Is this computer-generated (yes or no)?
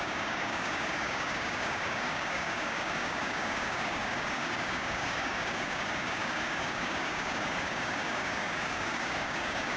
yes